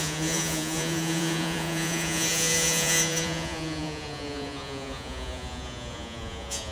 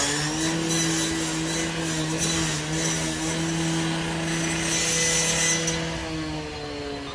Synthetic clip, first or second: first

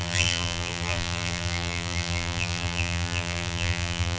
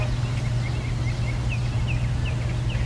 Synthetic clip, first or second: first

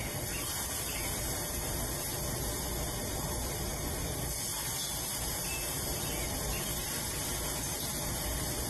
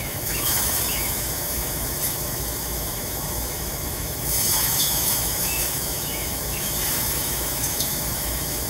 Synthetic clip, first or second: second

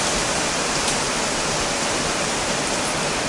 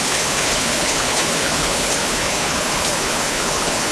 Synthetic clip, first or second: second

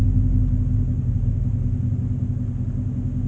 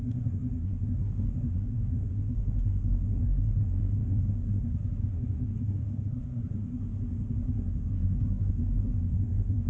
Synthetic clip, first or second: second